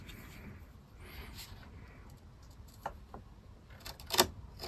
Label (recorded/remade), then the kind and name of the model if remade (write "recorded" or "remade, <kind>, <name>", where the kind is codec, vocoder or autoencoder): recorded